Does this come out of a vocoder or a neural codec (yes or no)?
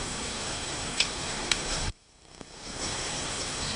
yes